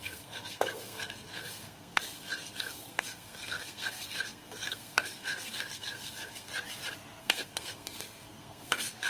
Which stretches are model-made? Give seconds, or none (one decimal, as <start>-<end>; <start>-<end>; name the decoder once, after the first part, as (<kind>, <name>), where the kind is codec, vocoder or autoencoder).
0.0-6.5 (codec, SNAC); 7.2-9.1